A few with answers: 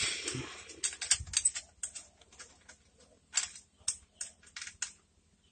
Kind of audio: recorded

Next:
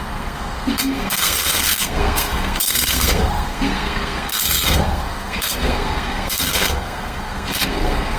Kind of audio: remade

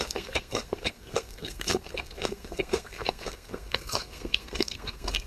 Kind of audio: remade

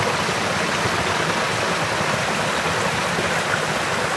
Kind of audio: recorded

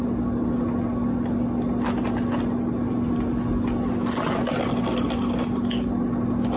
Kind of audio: recorded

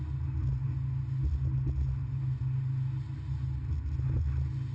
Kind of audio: recorded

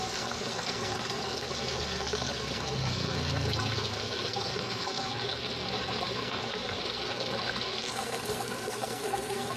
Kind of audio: remade